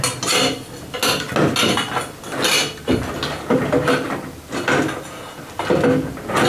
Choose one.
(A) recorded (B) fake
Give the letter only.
A